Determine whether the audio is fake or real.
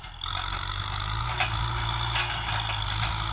real